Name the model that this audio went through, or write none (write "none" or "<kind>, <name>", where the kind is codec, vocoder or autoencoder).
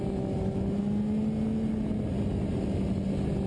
none